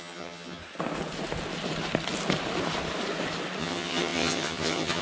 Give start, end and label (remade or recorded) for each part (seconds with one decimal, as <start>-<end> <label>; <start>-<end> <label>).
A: 0.0-0.6 remade; 0.6-3.6 recorded; 3.6-5.0 remade